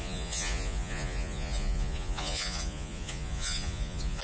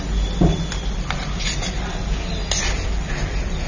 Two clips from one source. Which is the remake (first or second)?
first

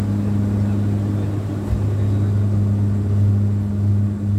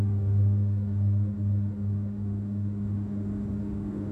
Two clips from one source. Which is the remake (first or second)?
second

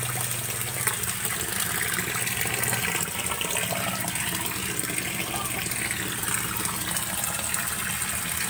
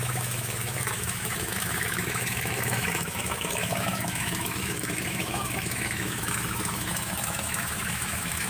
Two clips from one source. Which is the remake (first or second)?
second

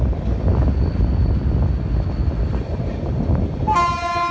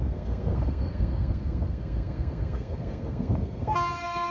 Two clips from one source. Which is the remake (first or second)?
second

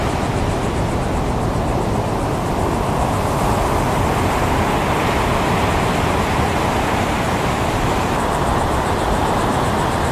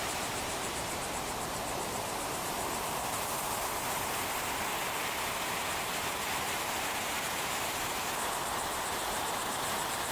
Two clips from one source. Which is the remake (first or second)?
second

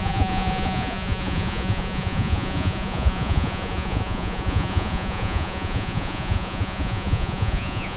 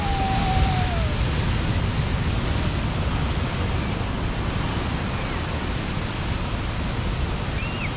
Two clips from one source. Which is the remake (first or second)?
first